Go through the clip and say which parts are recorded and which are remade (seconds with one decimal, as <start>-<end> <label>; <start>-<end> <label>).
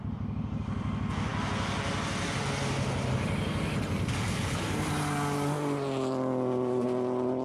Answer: 0.0-7.4 recorded